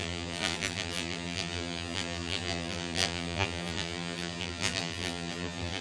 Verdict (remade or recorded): remade